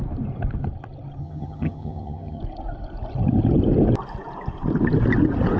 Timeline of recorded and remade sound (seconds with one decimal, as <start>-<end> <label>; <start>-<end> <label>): 0.0-1.2 recorded; 1.2-2.4 remade; 2.4-5.6 recorded